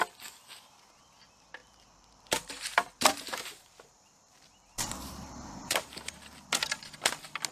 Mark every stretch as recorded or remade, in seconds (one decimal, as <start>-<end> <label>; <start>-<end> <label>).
0.0-1.6 recorded; 1.6-6.1 remade; 6.1-7.5 recorded